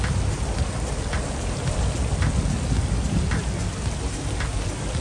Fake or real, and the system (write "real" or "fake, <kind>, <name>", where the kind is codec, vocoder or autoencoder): real